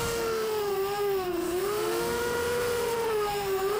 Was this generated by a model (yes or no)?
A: yes